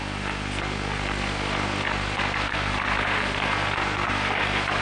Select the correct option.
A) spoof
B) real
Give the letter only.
A